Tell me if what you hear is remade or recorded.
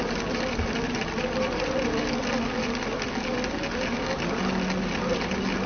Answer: recorded